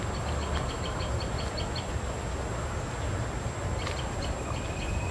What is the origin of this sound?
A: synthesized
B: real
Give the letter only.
B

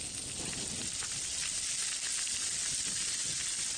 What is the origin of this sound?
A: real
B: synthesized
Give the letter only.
A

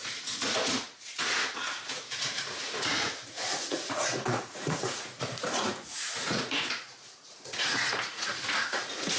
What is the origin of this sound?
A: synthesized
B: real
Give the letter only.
A